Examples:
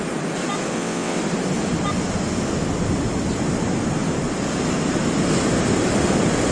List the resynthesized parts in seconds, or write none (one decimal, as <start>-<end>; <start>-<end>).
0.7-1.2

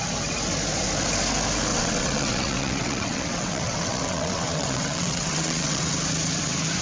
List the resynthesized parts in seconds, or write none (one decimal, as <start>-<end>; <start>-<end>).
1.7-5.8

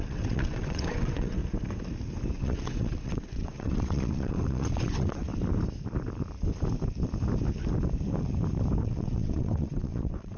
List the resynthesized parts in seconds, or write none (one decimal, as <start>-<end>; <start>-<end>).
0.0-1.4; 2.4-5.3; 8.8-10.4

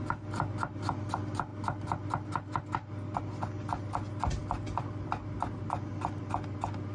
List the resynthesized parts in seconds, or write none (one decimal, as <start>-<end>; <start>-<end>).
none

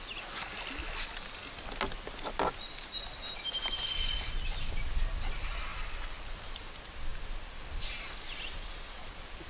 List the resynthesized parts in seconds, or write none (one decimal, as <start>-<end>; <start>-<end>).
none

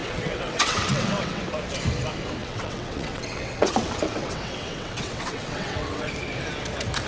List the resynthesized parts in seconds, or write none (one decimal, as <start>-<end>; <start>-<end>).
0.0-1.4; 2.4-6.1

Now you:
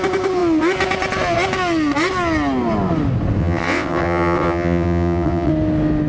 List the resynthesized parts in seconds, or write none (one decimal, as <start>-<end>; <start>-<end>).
3.4-5.5

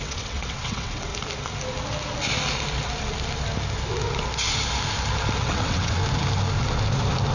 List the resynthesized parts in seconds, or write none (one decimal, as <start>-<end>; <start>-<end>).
0.0-1.1; 5.4-6.0